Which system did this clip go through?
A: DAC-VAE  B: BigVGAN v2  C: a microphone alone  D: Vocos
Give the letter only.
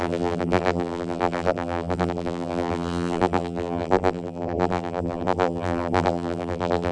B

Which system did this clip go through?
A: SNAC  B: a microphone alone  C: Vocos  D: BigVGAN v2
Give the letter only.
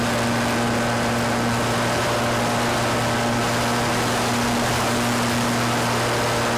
B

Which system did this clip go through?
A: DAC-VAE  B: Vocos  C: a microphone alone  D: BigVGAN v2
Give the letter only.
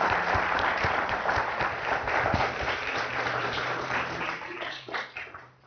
D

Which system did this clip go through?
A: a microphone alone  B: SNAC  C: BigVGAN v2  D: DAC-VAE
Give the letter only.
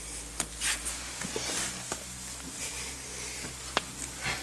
A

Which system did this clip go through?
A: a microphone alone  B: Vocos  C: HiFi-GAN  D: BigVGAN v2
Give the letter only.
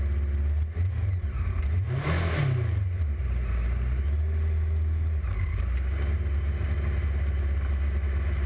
A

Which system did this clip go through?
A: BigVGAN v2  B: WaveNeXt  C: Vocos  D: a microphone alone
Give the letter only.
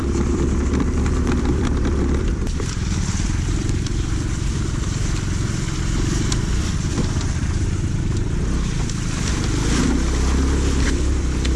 A